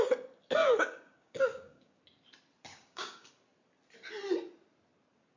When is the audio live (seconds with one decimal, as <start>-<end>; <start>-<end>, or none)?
0.0-0.6; 2.0-2.7; 3.3-5.4